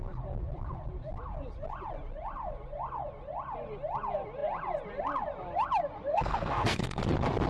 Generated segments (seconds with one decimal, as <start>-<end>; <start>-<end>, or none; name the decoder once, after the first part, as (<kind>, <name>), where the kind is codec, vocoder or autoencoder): 6.1-7.0 (codec, SNAC)